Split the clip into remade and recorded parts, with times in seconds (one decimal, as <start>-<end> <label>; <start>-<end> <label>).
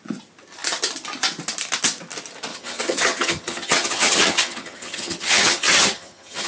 0.0-2.5 recorded; 2.5-6.5 remade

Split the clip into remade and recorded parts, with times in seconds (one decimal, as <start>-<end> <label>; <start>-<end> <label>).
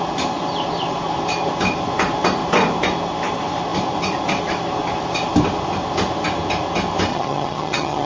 0.0-7.1 recorded; 7.1-8.1 remade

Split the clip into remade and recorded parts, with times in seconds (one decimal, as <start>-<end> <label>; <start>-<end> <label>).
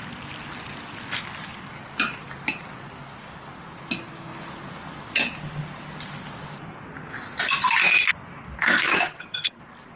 0.0-8.9 recorded; 8.9-9.6 remade; 9.6-10.0 recorded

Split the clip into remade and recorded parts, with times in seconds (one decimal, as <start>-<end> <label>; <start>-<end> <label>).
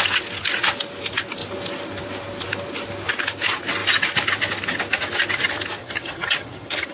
0.0-5.8 recorded; 5.8-6.9 remade